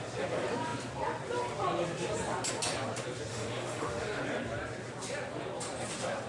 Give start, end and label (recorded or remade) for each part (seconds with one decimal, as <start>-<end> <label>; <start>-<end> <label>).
0.0-3.3 recorded; 3.3-4.2 remade; 4.2-6.3 recorded